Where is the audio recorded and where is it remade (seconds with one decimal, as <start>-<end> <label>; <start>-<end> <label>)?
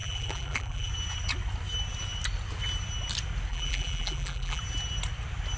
0.0-0.9 remade; 0.9-3.5 recorded; 3.5-4.6 remade; 4.6-5.6 recorded